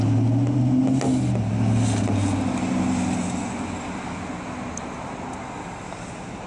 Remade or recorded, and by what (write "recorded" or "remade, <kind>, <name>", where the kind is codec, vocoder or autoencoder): recorded